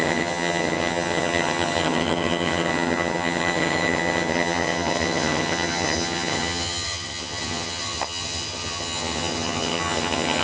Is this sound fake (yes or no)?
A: yes